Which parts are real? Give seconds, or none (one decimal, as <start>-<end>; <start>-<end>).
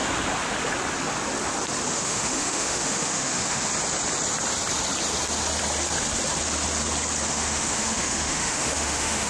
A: 0.0-1.9; 3.7-7.3